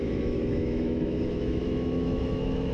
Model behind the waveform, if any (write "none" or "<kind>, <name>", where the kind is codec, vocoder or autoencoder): autoencoder, DAC-VAE